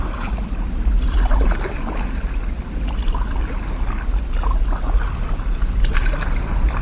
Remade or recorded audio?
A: recorded